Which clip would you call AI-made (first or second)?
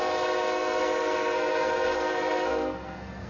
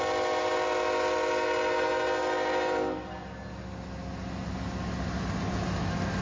first